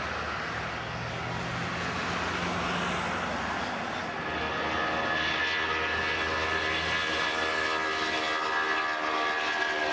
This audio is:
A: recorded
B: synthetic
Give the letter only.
A